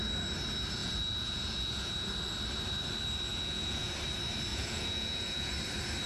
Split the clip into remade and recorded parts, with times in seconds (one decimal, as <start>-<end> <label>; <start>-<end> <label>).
0.0-0.8 recorded; 0.8-2.1 remade; 2.1-3.3 recorded; 3.3-3.9 remade; 3.9-4.5 recorded; 4.5-5.5 remade; 5.5-6.1 recorded